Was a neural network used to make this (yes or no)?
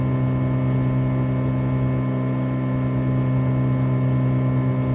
no